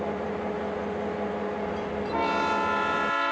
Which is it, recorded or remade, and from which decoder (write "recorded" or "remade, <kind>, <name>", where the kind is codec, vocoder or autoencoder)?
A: recorded